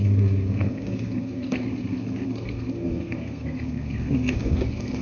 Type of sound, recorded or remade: remade